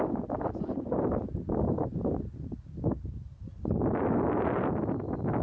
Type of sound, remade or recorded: recorded